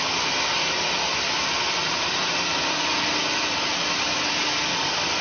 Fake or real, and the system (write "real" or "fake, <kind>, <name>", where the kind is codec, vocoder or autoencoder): real